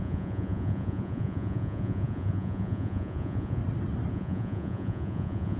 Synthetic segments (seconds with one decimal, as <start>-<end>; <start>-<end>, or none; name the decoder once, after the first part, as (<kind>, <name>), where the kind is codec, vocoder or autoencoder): 0.0-3.6 (vocoder, Vocos); 4.1-5.6